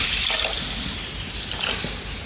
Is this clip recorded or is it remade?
recorded